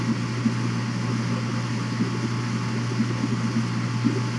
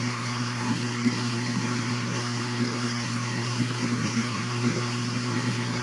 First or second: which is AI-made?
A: second